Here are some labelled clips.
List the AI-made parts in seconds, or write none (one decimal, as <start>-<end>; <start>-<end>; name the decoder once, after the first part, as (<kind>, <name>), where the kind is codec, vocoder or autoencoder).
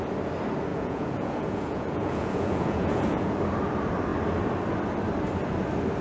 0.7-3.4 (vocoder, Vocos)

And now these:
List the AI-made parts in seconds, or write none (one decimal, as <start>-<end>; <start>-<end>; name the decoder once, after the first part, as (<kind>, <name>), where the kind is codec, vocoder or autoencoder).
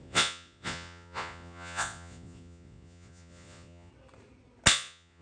0.0-3.9 (vocoder, Vocos); 4.7-5.2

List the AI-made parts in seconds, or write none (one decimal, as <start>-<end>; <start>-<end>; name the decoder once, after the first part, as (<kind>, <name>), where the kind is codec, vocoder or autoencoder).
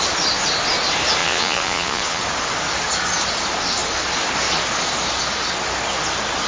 1.2-2.2 (vocoder, Vocos)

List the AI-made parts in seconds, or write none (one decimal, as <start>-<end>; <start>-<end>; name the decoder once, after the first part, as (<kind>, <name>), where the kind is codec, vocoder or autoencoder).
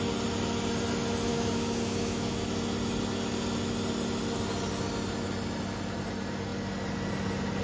1.3-2.4 (autoencoder, DAC-VAE)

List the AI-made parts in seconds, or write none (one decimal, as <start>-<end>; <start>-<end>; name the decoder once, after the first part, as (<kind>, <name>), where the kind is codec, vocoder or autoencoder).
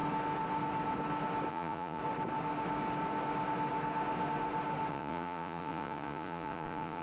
1.5-2.0 (vocoder, Vocos); 4.9-7.0